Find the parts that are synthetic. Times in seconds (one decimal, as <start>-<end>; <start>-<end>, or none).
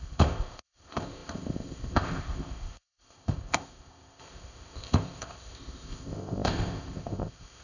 0.0-7.6